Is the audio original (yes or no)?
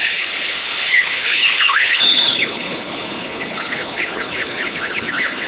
no